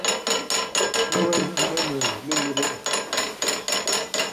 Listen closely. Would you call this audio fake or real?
real